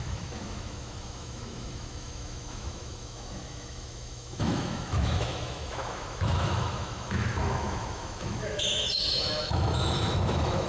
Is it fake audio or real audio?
fake